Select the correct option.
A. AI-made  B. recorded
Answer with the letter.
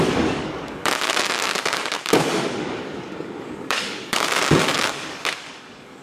A